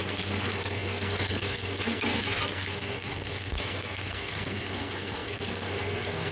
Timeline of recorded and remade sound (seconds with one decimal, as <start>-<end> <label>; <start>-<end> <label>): 0.0-6.3 remade